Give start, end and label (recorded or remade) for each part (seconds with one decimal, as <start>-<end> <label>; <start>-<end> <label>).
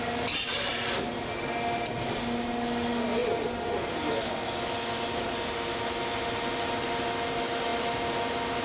0.0-8.6 recorded